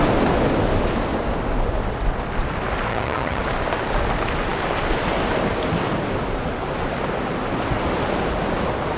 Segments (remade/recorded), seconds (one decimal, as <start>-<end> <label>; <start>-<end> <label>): 0.0-2.9 recorded; 2.9-3.4 remade; 3.4-9.0 recorded